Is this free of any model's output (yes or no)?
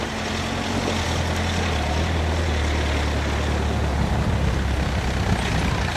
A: yes